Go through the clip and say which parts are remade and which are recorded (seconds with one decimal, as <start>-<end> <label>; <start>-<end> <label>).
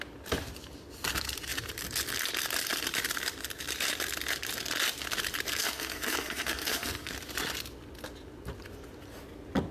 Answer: 0.0-5.6 recorded; 5.6-7.1 remade; 7.1-9.7 recorded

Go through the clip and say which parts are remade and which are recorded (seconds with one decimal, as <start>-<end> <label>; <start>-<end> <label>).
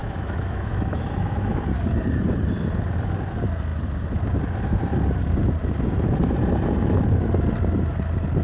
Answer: 0.0-1.6 remade; 1.6-8.4 recorded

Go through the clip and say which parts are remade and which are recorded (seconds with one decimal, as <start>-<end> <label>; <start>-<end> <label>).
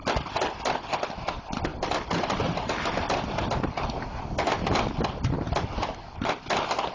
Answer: 0.0-1.7 recorded; 1.7-3.9 remade; 3.9-6.9 recorded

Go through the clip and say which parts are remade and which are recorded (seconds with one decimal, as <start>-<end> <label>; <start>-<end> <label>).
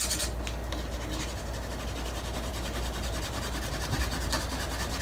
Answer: 0.0-5.0 recorded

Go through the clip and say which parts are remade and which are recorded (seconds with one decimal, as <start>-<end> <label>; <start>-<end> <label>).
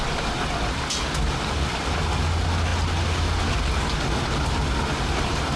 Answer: 0.0-5.6 recorded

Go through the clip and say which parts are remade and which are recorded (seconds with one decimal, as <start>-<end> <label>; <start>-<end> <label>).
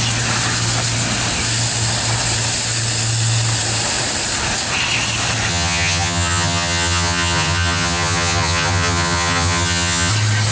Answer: 0.0-5.5 recorded; 5.5-10.1 remade; 10.1-10.5 recorded